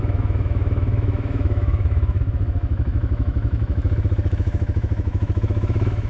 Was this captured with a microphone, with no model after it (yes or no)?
no